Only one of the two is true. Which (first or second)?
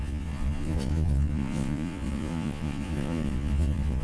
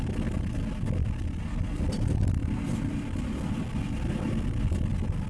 second